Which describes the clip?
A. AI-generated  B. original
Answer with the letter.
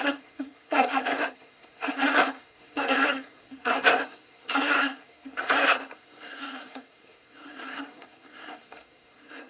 A